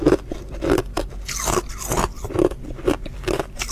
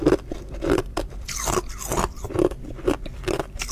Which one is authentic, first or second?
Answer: first